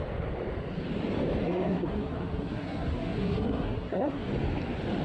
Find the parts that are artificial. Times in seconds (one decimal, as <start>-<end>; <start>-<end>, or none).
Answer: 1.4-4.3